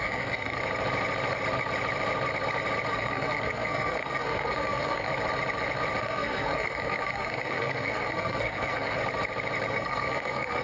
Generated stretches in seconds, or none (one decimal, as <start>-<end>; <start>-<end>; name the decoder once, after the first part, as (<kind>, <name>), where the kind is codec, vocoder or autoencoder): 0.0-0.6 (codec, SNAC); 2.9-5.1; 6.0-9.0; 9.7-10.6